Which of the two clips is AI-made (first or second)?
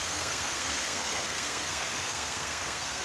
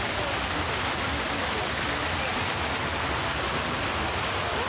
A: first